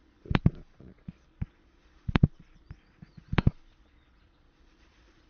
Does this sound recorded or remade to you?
remade